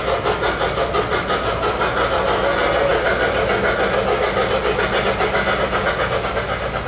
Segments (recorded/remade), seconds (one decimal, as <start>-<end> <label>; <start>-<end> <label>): 0.0-6.9 recorded